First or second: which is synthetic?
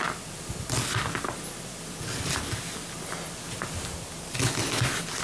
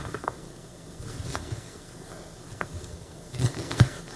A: second